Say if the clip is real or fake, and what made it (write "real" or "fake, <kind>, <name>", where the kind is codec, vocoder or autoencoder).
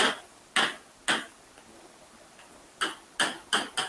real